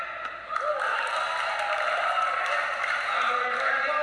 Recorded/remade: recorded